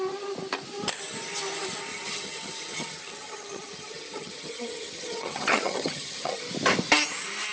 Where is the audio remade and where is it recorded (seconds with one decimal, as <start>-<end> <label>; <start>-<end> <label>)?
0.0-1.9 recorded; 1.9-6.4 remade; 6.4-7.5 recorded